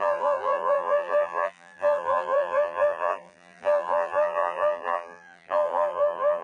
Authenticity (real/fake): fake